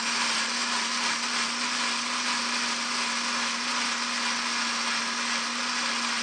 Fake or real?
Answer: real